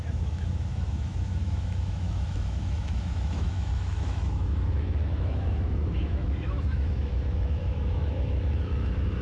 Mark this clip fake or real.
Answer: fake